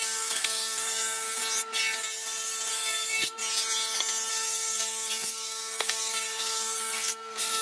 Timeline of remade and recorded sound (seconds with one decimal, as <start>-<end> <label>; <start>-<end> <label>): 0.0-1.4 remade; 1.4-2.7 recorded; 2.7-3.4 remade; 3.4-4.3 recorded; 4.3-7.6 remade